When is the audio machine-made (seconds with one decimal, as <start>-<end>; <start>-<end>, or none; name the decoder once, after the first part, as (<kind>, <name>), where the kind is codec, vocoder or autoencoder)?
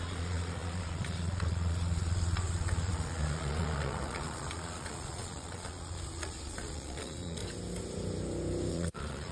0.0-7.4 (vocoder, Vocos); 8.7-9.3